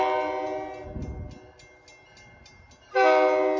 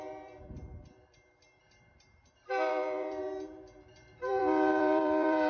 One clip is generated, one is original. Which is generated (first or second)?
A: second